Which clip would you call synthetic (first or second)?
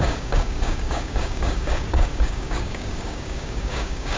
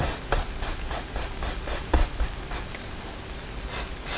first